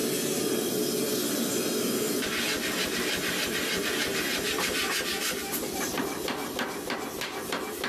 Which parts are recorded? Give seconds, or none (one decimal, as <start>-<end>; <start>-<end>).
0.0-7.9